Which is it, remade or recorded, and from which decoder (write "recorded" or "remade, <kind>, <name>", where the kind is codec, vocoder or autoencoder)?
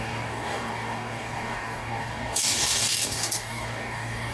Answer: remade, codec, DAC